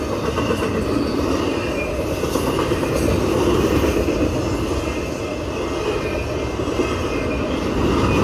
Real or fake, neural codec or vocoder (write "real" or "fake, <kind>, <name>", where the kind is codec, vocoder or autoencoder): real